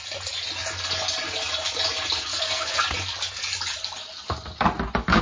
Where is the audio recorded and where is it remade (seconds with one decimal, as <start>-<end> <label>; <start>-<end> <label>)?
0.0-2.3 recorded; 2.3-2.8 remade; 2.8-5.2 recorded